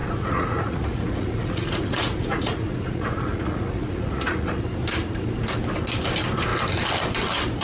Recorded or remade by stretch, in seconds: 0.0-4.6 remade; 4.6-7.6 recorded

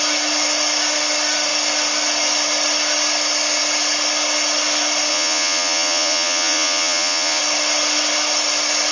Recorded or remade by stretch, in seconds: 0.0-5.1 recorded; 5.1-7.4 remade; 7.4-8.9 recorded

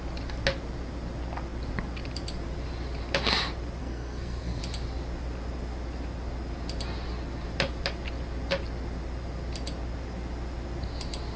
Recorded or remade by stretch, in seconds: 0.0-3.8 recorded; 3.8-4.6 remade; 4.6-11.4 recorded

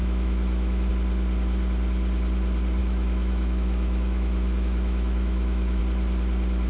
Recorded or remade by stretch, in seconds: 0.0-0.9 remade; 0.9-2.8 recorded; 2.8-5.8 remade; 5.8-6.7 recorded